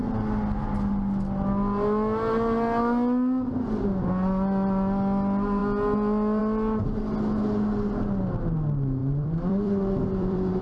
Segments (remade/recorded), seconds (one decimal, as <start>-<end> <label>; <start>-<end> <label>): 0.0-9.0 recorded; 9.0-10.6 remade